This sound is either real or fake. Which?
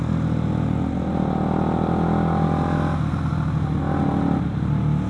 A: real